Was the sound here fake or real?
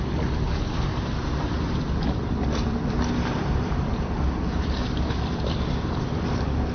fake